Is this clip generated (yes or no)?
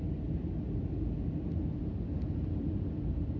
no